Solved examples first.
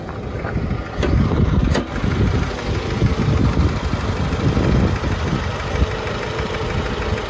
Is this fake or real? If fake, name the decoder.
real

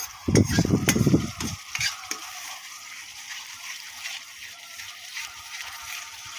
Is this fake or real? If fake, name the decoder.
fake, vocoder, BigVGAN v2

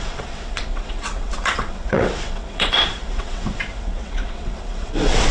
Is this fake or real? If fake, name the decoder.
fake, vocoder, WaveNeXt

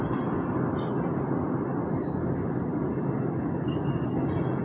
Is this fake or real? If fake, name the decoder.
real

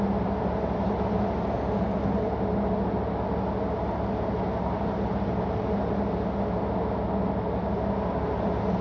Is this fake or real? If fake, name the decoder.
real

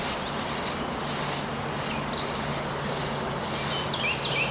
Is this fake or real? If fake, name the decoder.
real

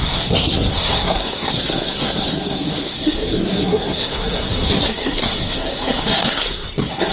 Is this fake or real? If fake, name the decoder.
fake, codec, SNAC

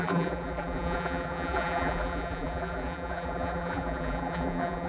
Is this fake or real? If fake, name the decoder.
fake, vocoder, BigVGAN v2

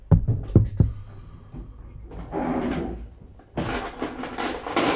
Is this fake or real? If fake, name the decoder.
real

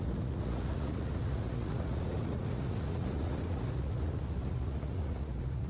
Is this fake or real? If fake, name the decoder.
fake, vocoder, Vocos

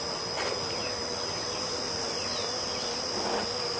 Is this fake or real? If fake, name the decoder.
real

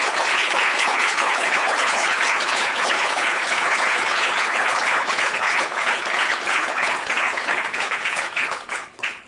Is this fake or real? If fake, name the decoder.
fake, codec, HILCodec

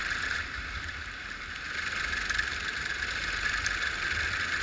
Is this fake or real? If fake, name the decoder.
real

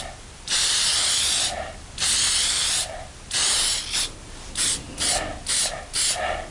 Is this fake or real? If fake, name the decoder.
real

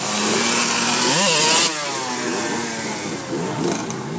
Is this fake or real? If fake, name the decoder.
real